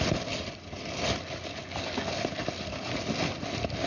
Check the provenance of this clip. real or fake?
real